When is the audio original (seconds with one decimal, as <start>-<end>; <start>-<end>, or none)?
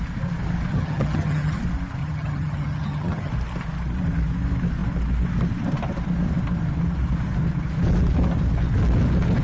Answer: 0.0-0.7; 1.6-2.0; 3.3-9.4